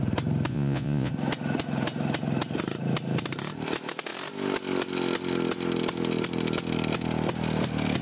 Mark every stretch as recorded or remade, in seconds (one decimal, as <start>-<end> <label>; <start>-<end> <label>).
0.0-0.5 recorded; 0.5-1.1 remade; 1.1-8.0 recorded